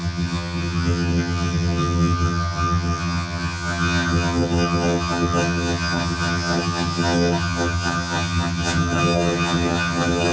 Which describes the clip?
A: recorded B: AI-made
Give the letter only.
B